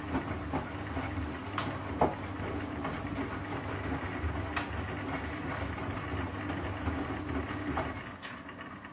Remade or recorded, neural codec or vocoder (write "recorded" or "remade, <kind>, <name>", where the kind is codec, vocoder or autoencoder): recorded